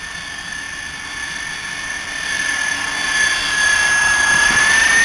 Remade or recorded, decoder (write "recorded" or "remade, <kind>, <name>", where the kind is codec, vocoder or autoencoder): recorded